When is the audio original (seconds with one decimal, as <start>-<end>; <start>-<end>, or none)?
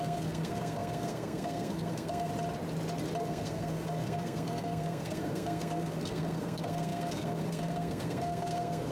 2.3-3.2